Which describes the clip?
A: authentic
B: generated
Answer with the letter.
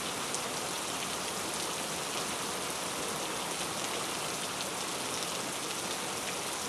A